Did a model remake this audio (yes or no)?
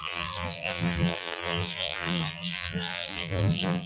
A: yes